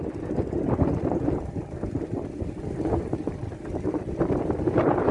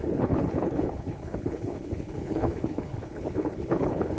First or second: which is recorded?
first